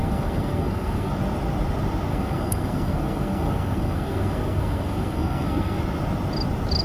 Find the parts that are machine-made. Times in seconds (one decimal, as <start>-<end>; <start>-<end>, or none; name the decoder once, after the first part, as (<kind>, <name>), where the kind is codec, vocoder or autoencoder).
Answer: 0.0-1.1 (codec, SNAC); 2.1-5.8